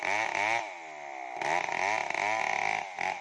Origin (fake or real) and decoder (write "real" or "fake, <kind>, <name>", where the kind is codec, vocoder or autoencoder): real